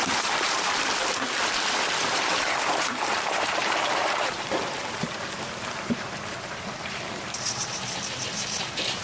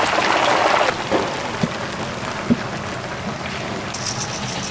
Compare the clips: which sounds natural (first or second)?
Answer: second